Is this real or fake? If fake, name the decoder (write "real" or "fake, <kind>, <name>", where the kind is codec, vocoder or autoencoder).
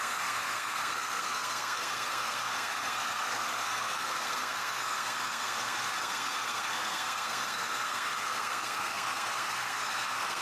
fake, codec, SNAC